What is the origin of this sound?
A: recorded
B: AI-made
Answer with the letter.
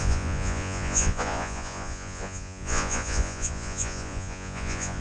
B